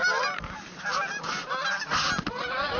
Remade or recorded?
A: recorded